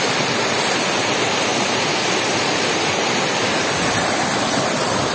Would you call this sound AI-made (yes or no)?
yes